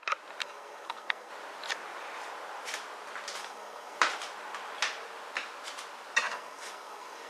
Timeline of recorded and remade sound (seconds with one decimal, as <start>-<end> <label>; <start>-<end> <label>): 0.0-0.4 recorded; 0.4-1.3 remade; 1.3-3.4 recorded; 3.4-4.0 remade; 4.0-6.3 recorded; 6.3-7.3 remade